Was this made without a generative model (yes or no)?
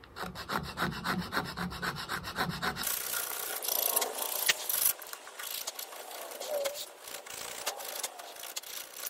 yes